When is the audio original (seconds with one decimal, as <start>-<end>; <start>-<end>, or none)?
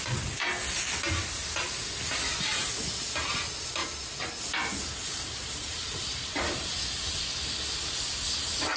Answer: 0.0-5.0; 6.8-8.8